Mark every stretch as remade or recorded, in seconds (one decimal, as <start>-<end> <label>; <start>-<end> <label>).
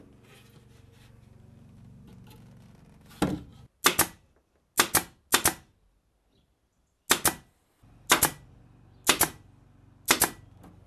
0.0-10.9 recorded